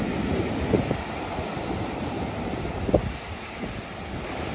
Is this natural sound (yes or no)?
yes